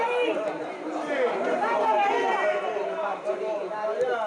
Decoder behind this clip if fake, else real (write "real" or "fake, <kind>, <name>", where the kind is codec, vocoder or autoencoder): fake, vocoder, BigVGAN v2